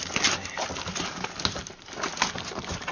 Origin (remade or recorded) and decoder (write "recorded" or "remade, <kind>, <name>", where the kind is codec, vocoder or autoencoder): recorded